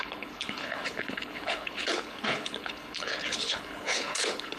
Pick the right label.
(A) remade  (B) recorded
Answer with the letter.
A